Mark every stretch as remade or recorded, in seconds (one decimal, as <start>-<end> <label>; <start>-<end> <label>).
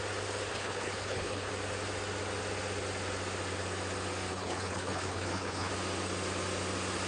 0.0-0.5 recorded; 0.5-1.5 remade; 1.5-4.3 recorded; 4.3-5.7 remade; 5.7-7.1 recorded